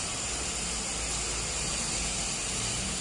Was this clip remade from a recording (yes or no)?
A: no